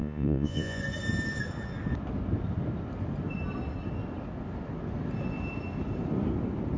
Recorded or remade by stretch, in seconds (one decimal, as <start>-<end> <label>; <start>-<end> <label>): 0.0-0.8 remade; 0.8-6.8 recorded